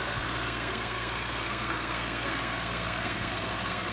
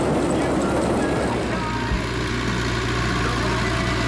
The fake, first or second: first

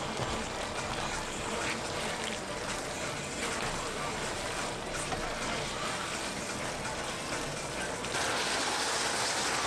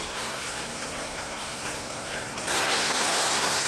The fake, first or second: second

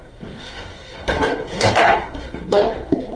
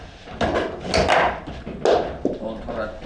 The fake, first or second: first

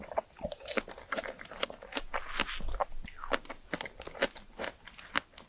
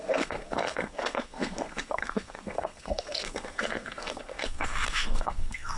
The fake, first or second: second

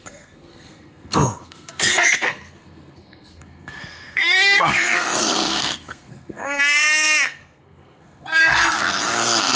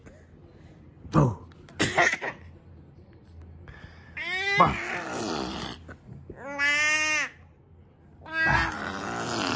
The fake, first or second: first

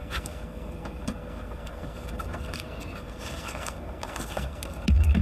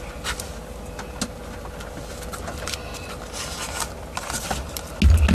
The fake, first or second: first